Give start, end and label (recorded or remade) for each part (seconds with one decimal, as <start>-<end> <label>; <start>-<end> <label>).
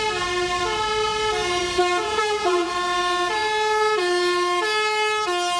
0.0-2.0 recorded; 2.0-2.7 remade; 2.7-5.6 recorded